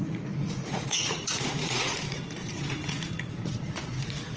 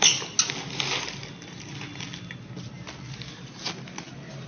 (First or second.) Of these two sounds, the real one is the second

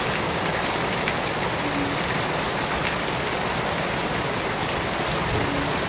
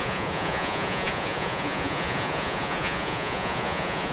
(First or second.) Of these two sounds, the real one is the first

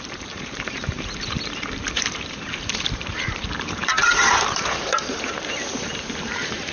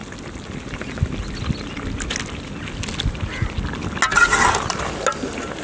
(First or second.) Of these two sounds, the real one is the second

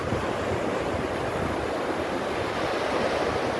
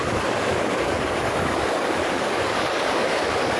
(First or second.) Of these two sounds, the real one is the first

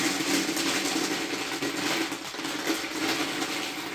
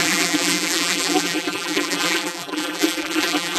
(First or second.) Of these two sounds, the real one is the first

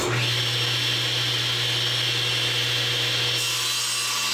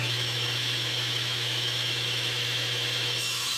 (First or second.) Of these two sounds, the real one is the first